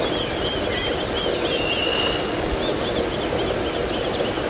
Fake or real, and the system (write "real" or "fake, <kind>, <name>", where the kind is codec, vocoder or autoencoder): real